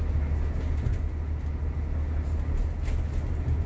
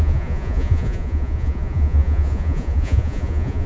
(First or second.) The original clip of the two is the first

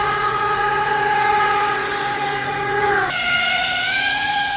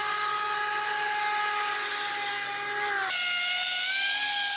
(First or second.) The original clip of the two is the second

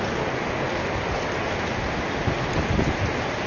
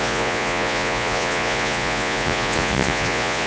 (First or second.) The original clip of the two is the first